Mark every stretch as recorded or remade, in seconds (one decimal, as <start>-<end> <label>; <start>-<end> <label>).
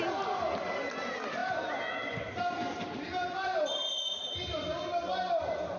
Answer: 0.0-5.8 recorded